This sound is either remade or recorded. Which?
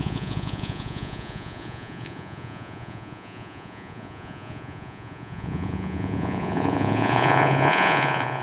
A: remade